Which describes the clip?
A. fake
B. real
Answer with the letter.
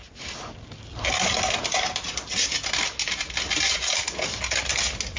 B